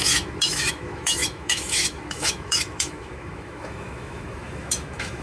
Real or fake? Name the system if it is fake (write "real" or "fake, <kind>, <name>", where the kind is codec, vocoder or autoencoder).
fake, autoencoder, DAC-VAE